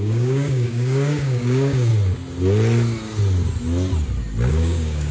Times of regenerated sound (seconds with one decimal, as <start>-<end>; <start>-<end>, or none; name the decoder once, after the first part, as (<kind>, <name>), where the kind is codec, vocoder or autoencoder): 0.0-1.9 (codec, DAC); 4.5-5.1